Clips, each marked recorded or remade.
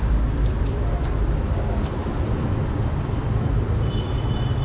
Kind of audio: remade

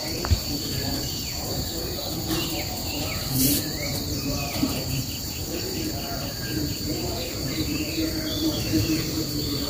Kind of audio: remade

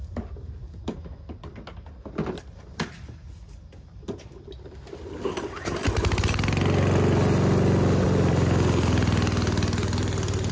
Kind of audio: recorded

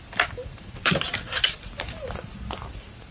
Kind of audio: remade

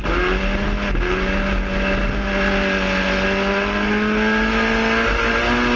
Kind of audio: recorded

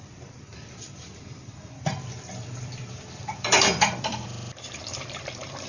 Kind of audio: remade